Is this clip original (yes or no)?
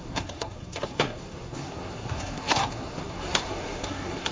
no